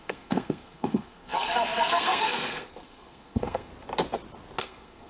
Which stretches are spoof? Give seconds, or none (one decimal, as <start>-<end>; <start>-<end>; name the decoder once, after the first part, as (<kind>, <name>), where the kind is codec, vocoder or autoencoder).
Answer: 0.0-3.7 (codec, SNAC); 4.6-5.1